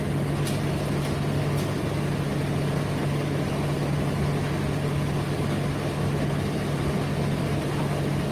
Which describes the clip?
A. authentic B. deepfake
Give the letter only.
A